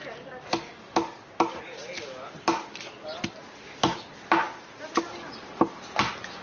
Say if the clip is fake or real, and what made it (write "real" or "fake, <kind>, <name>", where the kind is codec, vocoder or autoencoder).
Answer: real